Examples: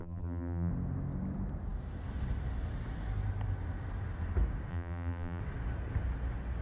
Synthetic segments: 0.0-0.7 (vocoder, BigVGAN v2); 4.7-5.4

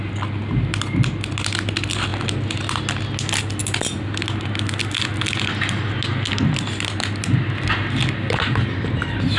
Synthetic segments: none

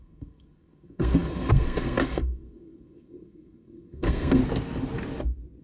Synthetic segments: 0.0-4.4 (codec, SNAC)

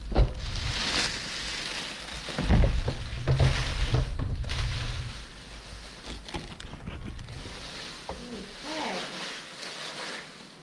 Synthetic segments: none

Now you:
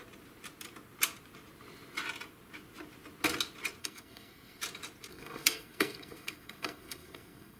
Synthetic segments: 3.8-4.6 (codec, SNAC); 5.1-7.6